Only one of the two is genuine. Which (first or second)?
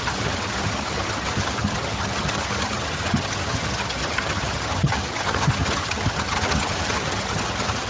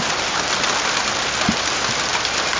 second